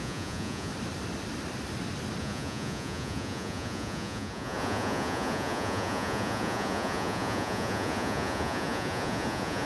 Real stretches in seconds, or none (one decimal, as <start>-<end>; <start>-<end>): 0.7-2.2